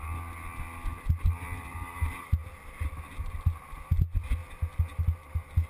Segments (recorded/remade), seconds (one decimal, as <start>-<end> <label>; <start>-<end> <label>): 0.0-5.7 recorded